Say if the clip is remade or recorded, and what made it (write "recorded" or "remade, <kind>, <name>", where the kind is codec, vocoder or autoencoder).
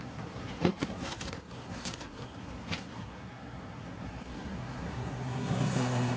remade, codec, SNAC